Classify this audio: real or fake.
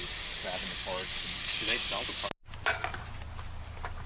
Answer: real